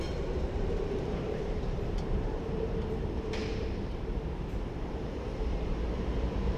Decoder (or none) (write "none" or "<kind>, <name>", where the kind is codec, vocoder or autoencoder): vocoder, BigVGAN v2